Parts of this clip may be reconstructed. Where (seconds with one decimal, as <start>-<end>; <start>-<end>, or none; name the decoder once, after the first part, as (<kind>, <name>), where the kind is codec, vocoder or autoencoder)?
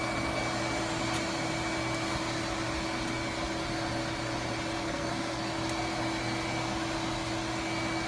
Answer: 4.8-5.4 (codec, SNAC)